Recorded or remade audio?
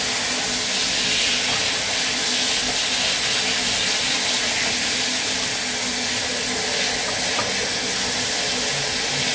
recorded